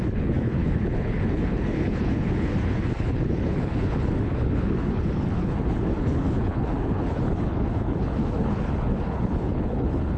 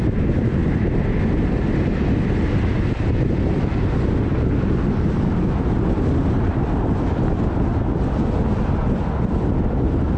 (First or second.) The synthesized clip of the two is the first